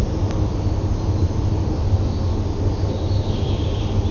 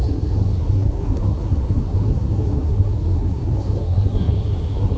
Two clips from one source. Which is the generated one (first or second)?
second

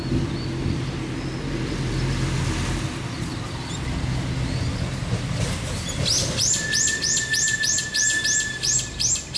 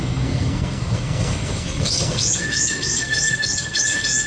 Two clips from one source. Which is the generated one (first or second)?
second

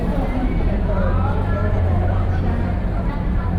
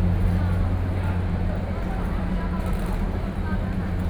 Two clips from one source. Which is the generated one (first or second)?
first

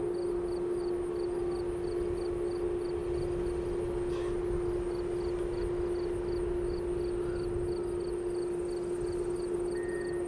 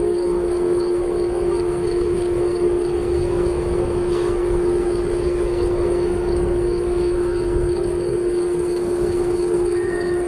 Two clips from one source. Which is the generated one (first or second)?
second